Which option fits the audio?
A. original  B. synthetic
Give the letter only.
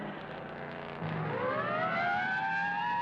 A